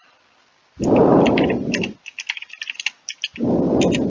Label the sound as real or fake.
real